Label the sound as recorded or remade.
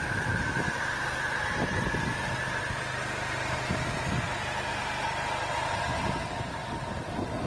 recorded